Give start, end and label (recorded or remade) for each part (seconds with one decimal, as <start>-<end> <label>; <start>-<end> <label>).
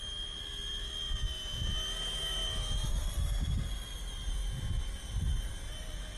0.0-6.2 recorded